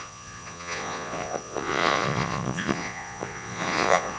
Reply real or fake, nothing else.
fake